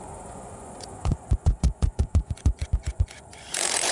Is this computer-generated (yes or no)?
yes